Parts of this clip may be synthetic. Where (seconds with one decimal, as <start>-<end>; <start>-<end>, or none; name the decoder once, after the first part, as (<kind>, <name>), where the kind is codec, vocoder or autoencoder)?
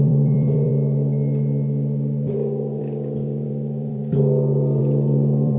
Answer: 0.0-0.7 (vocoder, BigVGAN v2); 2.8-4.0; 4.8-5.6